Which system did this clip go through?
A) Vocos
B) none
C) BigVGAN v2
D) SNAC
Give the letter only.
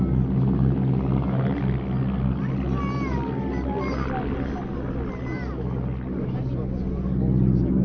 B